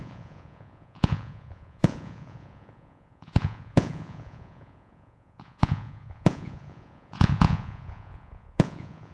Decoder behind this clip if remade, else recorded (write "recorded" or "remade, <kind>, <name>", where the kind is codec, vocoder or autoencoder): remade, vocoder, Vocos